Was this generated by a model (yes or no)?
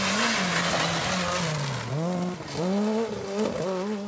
no